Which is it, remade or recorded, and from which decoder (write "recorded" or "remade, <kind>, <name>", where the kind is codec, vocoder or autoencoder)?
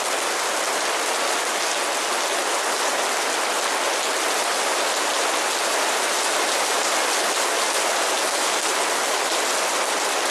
recorded